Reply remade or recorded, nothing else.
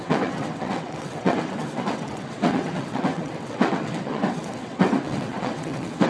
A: remade